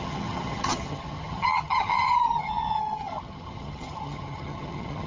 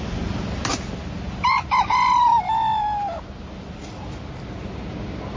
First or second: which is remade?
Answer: first